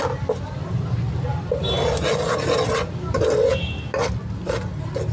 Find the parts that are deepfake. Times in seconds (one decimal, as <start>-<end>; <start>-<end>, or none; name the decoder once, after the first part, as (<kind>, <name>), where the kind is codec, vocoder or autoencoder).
none